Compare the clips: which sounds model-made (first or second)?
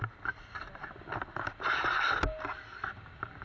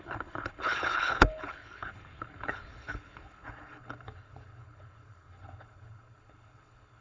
second